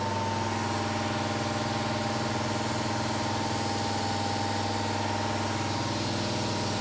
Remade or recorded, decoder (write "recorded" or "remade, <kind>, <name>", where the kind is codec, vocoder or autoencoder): recorded